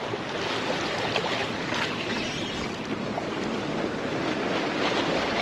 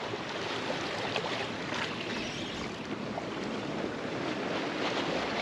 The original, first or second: first